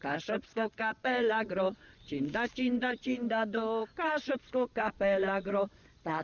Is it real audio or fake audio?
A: fake